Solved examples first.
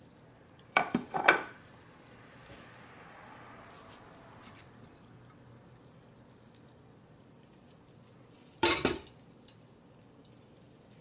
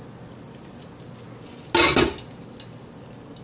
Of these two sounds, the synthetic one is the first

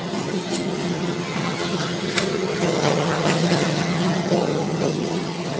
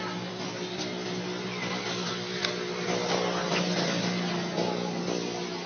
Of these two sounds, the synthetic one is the first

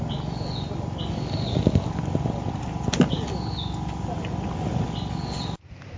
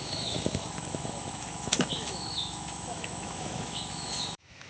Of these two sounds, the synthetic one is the second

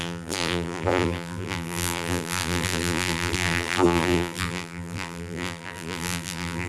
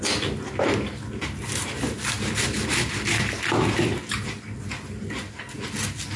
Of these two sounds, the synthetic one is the first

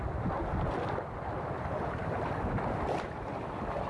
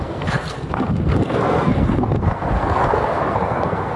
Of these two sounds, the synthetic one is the second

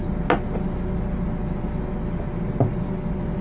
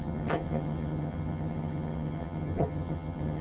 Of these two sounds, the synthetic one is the second